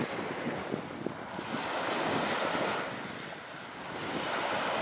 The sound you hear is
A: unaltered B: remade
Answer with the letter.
A